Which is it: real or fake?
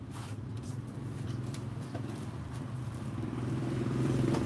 fake